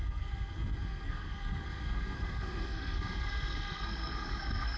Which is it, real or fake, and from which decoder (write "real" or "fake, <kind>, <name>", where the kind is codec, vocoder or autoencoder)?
fake, codec, SNAC